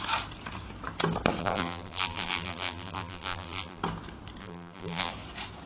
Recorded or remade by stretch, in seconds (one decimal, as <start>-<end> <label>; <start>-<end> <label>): 0.0-1.4 recorded; 1.4-3.8 remade; 3.8-4.4 recorded; 4.4-5.1 remade; 5.1-5.7 recorded

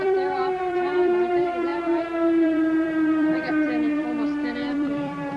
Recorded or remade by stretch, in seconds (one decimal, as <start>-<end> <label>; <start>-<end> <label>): 0.0-5.4 remade

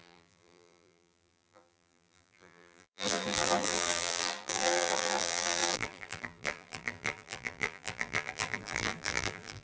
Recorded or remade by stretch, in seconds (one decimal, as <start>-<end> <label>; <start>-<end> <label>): 0.0-9.6 remade

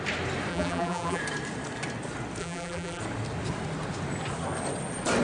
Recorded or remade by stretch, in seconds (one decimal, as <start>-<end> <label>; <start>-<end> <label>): 0.0-0.5 recorded; 0.5-1.2 remade; 1.2-2.4 recorded; 2.4-3.0 remade; 3.0-5.2 recorded

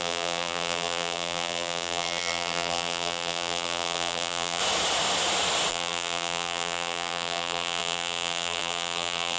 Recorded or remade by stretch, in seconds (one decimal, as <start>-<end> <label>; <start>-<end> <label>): 0.0-4.6 remade; 4.6-5.7 recorded; 5.7-9.4 remade

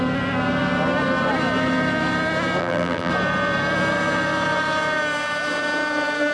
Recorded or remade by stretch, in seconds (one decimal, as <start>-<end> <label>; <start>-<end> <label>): 0.0-2.6 recorded; 2.6-3.1 remade; 3.1-6.3 recorded